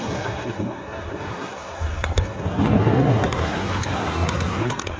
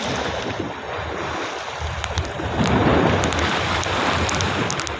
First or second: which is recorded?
second